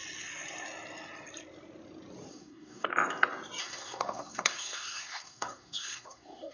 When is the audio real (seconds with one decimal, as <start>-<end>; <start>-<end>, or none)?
0.0-2.3; 2.9-3.6